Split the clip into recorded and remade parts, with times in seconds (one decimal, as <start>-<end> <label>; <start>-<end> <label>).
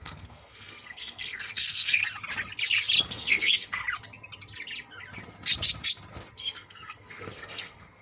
0.0-2.0 remade; 2.0-3.1 recorded; 3.1-3.8 remade; 3.8-6.4 recorded; 6.4-8.0 remade